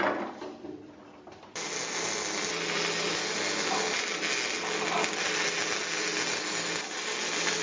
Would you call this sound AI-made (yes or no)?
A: no